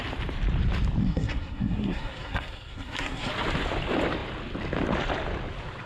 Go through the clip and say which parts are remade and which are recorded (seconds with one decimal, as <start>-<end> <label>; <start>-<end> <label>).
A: 0.0-1.0 recorded; 1.0-3.3 remade; 3.3-5.9 recorded